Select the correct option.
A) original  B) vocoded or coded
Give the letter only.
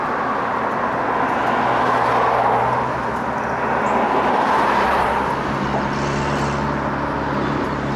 A